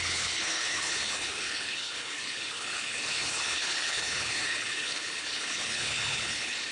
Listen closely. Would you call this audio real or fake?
fake